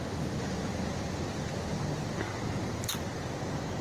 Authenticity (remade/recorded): recorded